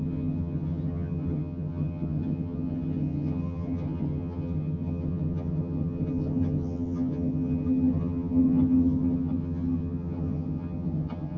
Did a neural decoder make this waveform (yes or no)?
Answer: yes